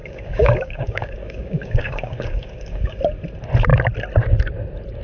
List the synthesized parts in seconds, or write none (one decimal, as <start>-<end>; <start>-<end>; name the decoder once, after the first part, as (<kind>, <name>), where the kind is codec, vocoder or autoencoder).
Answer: 0.0-3.0 (codec, DAC)